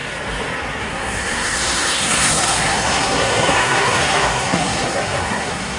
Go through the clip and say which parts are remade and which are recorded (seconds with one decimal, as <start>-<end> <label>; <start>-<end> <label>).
0.0-0.8 recorded; 0.8-5.8 remade

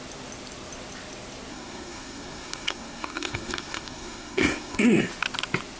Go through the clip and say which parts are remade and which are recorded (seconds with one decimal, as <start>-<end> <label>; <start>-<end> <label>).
0.0-1.5 recorded; 1.5-5.0 remade; 5.0-5.8 recorded

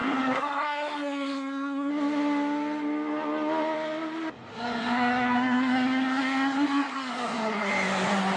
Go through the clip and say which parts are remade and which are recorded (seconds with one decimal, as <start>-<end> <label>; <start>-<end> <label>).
0.0-1.9 remade; 1.9-4.5 recorded; 4.5-7.7 remade; 7.7-8.4 recorded

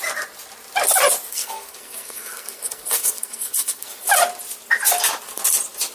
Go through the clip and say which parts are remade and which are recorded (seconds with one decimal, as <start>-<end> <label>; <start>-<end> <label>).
0.0-1.3 recorded; 1.3-4.1 remade; 4.1-5.9 recorded

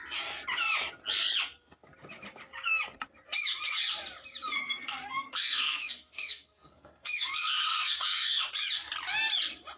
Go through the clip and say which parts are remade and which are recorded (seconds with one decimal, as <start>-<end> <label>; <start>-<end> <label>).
0.0-4.6 recorded; 4.6-8.5 remade; 8.5-9.8 recorded

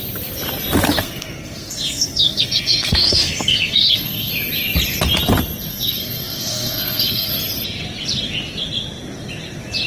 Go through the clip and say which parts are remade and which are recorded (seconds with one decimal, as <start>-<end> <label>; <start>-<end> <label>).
0.0-1.0 recorded; 1.0-4.3 remade; 4.3-5.7 recorded; 5.7-7.3 remade; 7.3-9.9 recorded

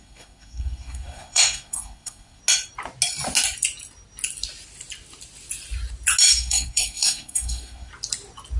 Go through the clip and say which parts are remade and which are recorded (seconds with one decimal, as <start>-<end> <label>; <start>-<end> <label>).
0.0-2.4 remade; 2.4-6.3 recorded; 6.3-7.9 remade; 7.9-8.6 recorded

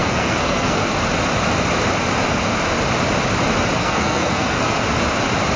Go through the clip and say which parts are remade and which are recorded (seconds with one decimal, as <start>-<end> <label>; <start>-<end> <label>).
0.0-1.0 remade; 1.0-3.8 recorded; 3.8-4.8 remade; 4.8-5.6 recorded